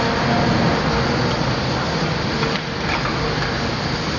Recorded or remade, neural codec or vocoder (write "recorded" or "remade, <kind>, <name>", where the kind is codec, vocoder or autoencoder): recorded